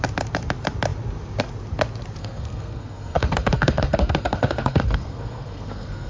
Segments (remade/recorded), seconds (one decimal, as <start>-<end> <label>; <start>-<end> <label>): 0.0-2.2 recorded; 2.2-6.1 remade